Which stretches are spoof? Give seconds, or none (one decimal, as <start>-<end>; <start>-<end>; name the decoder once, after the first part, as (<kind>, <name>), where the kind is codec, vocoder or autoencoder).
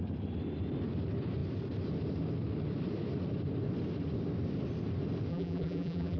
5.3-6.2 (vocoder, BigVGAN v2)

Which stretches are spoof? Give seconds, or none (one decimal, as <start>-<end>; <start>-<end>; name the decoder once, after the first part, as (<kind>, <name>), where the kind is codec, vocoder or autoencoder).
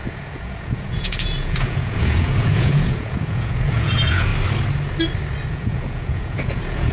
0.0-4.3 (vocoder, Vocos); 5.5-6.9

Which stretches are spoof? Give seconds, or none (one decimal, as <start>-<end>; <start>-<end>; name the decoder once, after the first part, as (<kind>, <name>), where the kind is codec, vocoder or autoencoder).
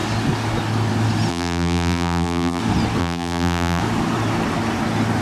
1.3-2.6 (vocoder, BigVGAN v2); 3.0-3.8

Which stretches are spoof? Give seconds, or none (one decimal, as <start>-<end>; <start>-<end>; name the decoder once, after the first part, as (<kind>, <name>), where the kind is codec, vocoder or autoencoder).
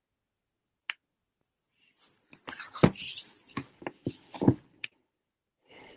none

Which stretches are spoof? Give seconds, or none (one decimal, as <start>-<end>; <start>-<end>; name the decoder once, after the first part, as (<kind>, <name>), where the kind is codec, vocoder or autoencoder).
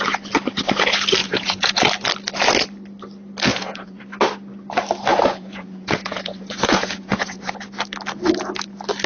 1.2-1.8 (vocoder, Vocos); 3.5-4.0; 5.1-7.5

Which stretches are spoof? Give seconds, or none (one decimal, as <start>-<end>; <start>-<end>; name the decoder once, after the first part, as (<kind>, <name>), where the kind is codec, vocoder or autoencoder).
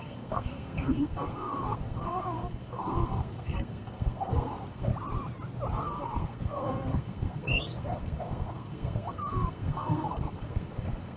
0.0-4.9 (codec, SNAC); 5.7-11.2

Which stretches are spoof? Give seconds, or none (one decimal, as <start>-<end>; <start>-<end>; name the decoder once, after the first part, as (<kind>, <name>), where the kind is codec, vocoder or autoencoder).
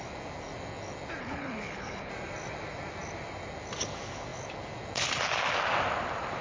1.2-2.1 (codec, HILCodec)